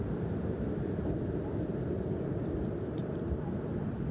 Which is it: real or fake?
fake